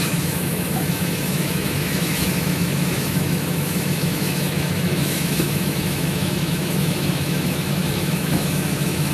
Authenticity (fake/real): fake